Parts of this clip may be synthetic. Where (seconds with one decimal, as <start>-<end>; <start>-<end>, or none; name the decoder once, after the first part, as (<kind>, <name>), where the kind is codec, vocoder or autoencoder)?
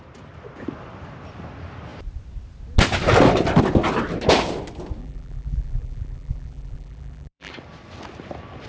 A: 5.0-7.5 (vocoder, BigVGAN v2)